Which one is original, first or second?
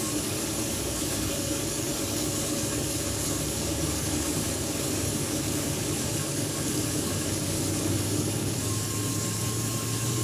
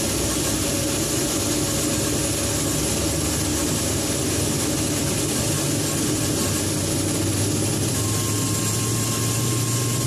second